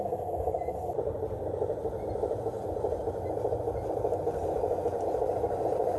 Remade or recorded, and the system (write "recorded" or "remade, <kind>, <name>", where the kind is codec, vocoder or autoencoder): recorded